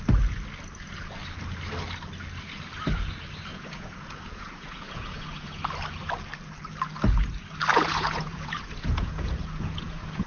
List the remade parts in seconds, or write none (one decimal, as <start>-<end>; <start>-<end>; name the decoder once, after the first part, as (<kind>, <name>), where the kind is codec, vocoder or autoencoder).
3.5-5.6 (vocoder, Vocos); 7.7-10.3